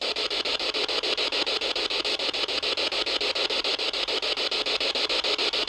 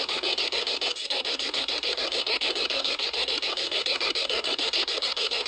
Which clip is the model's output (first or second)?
second